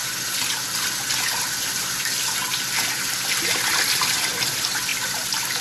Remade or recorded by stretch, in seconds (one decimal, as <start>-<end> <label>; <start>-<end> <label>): 0.0-3.0 recorded; 3.0-5.6 remade